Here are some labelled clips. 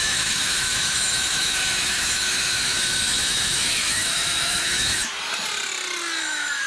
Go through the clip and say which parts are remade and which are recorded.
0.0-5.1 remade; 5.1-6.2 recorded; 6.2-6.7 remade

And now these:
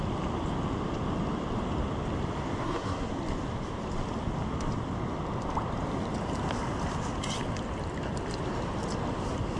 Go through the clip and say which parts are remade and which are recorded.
0.0-2.6 recorded; 2.6-3.1 remade; 3.1-9.6 recorded

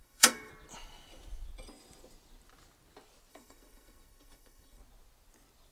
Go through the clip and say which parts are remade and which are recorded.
0.0-0.5 remade; 0.5-3.3 recorded; 3.3-4.8 remade; 4.8-5.7 recorded

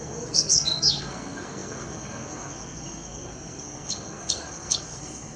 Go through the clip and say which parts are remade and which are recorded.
0.0-5.4 remade